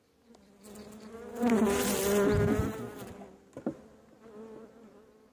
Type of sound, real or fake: real